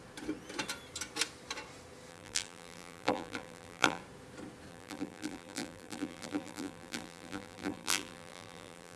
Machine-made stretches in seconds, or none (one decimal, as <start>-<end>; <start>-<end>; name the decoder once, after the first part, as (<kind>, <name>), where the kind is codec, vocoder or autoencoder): 2.1-4.0 (vocoder, BigVGAN v2); 4.7-9.0